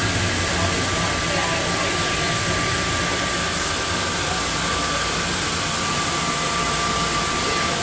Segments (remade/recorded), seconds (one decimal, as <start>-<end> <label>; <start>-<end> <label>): 0.0-7.8 recorded

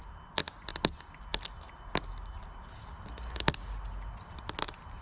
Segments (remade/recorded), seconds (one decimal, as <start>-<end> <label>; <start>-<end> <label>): 0.0-5.0 recorded